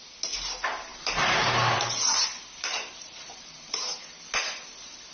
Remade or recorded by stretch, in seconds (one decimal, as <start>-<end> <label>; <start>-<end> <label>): 0.0-0.9 recorded; 0.9-4.0 remade; 4.0-5.1 recorded